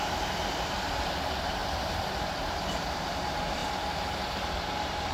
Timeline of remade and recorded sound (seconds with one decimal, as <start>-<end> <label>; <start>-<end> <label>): 0.0-1.6 remade; 1.6-2.4 recorded; 2.4-5.1 remade